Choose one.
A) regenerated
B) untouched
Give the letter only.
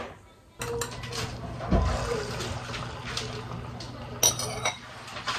B